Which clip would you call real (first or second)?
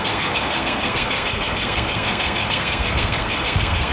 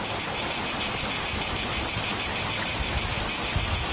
second